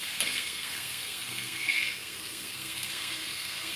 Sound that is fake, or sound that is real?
fake